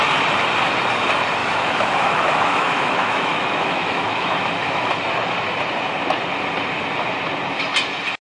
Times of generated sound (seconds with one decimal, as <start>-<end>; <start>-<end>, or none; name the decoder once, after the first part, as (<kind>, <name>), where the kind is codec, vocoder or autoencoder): 1.4-4.9 (autoencoder, DAC-VAE)